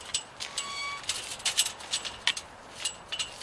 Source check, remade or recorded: recorded